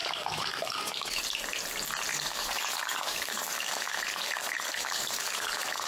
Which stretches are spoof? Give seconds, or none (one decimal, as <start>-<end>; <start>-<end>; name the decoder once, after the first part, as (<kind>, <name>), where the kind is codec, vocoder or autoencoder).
0.0-1.2 (codec, DAC); 2.1-5.9